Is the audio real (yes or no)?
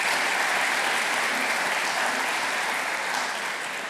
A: yes